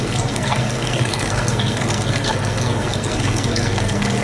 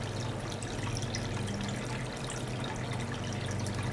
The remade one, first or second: first